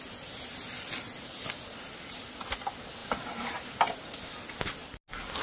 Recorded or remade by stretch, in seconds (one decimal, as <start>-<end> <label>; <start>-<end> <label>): 0.0-5.4 recorded